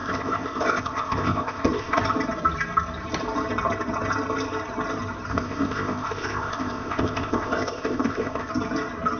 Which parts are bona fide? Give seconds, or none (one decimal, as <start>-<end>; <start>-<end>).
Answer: 2.0-5.3; 8.5-9.2

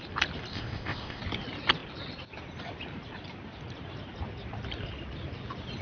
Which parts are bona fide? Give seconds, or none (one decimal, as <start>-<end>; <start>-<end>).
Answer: 0.0-0.5; 1.2-5.8